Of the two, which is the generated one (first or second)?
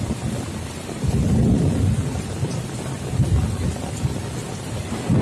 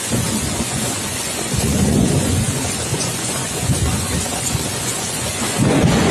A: second